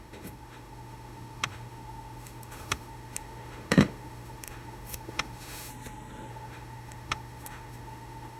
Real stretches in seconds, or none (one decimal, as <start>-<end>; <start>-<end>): 5.7-6.3